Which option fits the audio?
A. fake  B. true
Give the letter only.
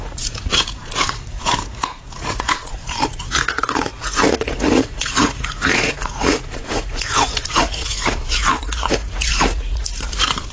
A